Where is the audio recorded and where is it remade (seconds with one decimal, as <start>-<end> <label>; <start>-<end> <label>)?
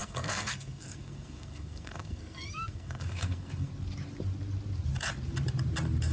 0.0-3.7 remade; 3.7-6.1 recorded